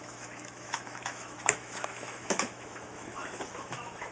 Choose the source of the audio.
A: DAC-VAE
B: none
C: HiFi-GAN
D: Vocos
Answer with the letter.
A